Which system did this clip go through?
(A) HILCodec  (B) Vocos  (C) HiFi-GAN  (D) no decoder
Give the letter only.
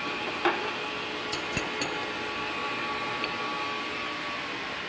D